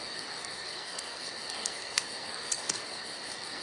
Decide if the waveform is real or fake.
fake